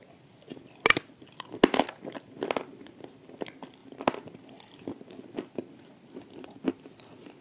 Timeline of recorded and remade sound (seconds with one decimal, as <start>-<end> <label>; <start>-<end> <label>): 0.0-7.4 recorded